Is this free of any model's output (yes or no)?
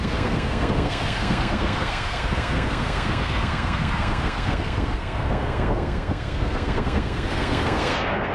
no